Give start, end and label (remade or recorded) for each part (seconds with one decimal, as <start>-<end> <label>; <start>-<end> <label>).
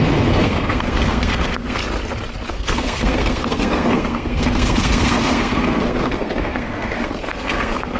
0.0-1.8 remade; 1.8-2.5 recorded; 2.5-8.0 remade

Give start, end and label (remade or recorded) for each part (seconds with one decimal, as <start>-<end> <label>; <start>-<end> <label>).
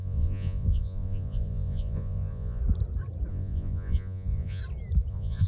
0.0-2.6 remade; 2.6-3.3 recorded; 3.3-4.6 remade; 4.6-5.1 recorded; 5.1-5.5 remade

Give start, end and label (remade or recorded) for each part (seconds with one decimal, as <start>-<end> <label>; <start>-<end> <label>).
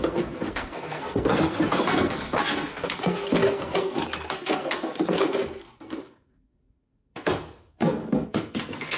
0.0-9.0 remade